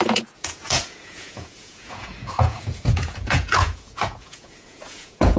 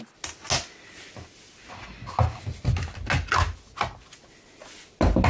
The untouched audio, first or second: second